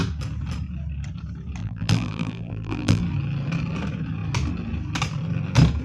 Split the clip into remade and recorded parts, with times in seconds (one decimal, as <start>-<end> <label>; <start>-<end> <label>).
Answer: 0.0-1.6 recorded; 1.6-3.0 remade; 3.0-5.8 recorded